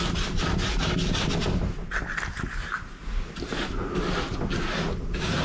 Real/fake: real